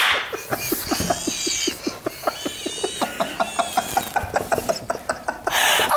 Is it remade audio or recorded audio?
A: recorded